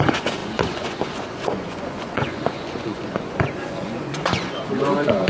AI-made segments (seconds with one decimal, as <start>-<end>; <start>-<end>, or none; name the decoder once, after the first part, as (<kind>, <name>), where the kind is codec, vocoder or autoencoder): 0.0-5.3 (vocoder, Vocos)